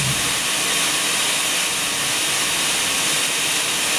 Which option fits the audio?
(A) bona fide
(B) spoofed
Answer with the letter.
A